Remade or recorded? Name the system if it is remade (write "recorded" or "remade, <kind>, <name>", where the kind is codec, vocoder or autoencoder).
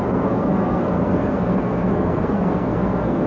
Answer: remade, codec, SNAC